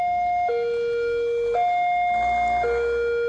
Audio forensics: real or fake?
real